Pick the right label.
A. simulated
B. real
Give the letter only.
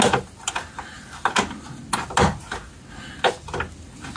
B